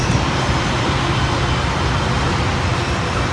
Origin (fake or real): real